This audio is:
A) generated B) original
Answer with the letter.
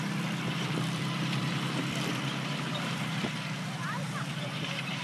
A